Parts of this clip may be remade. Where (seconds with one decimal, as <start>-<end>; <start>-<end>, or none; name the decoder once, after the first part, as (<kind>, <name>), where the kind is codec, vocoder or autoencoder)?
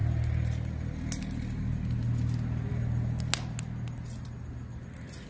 none